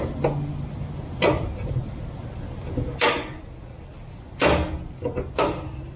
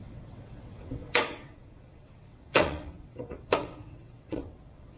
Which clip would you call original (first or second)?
first